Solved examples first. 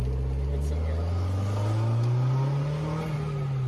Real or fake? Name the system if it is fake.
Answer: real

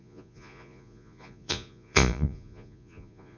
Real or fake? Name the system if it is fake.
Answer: fake, vocoder, Vocos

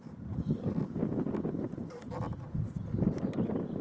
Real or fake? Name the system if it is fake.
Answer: real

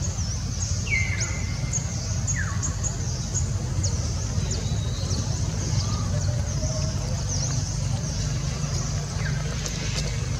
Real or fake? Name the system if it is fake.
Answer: real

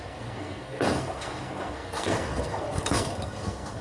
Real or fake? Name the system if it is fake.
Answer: fake, codec, SNAC